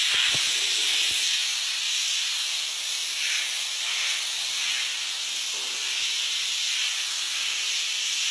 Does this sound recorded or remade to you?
recorded